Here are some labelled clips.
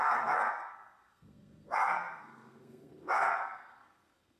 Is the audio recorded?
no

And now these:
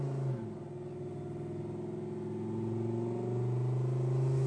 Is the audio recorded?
yes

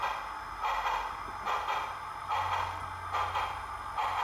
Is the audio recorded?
yes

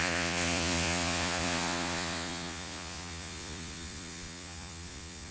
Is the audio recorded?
no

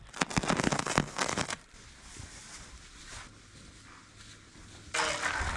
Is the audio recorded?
yes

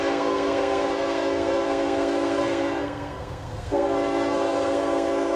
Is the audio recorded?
no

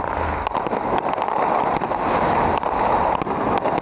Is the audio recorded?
yes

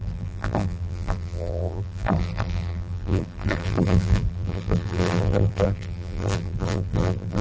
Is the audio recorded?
no